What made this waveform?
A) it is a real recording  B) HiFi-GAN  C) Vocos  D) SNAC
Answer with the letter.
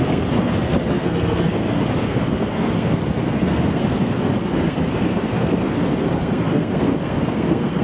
D